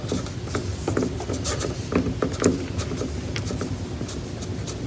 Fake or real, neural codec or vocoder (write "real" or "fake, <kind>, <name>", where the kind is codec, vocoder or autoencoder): real